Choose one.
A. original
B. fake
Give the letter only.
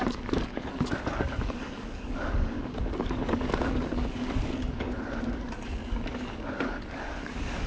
B